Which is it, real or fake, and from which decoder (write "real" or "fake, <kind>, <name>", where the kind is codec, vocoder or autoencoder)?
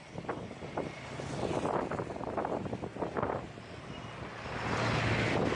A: real